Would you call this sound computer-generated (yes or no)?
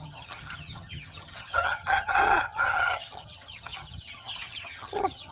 yes